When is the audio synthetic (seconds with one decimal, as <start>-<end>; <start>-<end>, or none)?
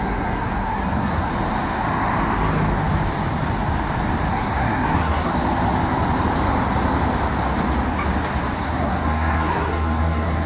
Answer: 0.0-1.3; 4.3-5.3; 8.6-10.5